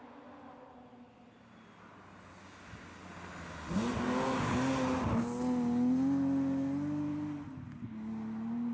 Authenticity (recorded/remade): recorded